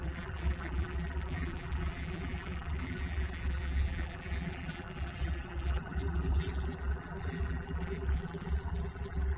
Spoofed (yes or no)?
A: yes